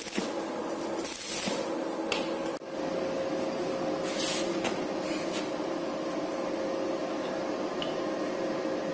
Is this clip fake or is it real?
real